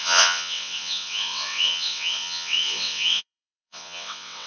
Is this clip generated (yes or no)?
yes